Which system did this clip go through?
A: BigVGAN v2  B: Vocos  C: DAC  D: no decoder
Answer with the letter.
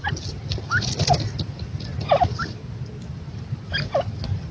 D